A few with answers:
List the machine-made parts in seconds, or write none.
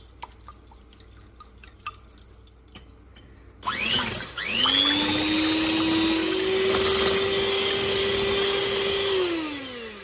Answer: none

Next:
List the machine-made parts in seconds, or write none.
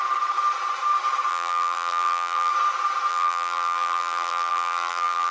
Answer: 1.3-2.5 (vocoder, BigVGAN v2); 3.1-5.3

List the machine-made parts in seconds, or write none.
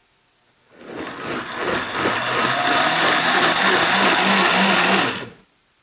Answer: none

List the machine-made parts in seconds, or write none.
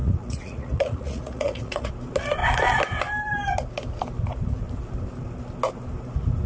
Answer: 0.0-1.9 (vocoder, Vocos)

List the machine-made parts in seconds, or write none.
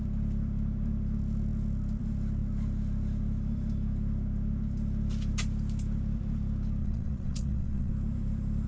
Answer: 6.8-7.9 (vocoder, WaveNeXt)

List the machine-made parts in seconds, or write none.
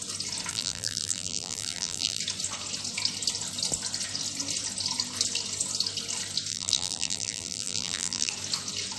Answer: 0.5-2.2 (vocoder, BigVGAN v2); 6.5-8.3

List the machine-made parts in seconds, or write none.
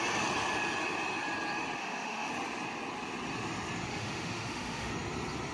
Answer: 1.8-2.3 (autoencoder, DAC-VAE); 3.9-4.9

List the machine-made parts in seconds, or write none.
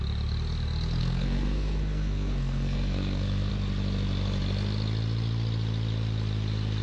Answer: 1.0-3.5 (codec, SNAC)